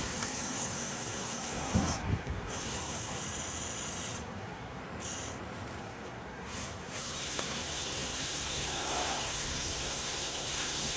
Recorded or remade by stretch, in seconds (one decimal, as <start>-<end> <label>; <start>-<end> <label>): 0.0-3.2 remade; 3.2-4.2 recorded; 4.2-4.8 remade; 4.8-5.8 recorded; 5.8-11.0 remade